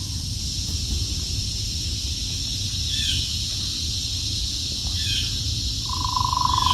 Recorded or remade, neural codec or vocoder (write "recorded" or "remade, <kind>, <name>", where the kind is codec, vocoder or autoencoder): recorded